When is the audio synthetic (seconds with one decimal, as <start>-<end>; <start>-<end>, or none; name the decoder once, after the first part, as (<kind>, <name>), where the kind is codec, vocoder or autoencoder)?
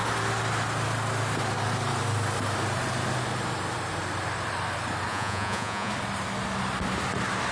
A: 5.1-5.9 (vocoder, Vocos)